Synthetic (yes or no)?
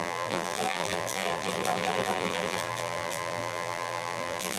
yes